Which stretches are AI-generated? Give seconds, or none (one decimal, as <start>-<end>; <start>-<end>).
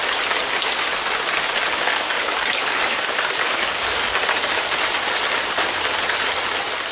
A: 1.7-4.2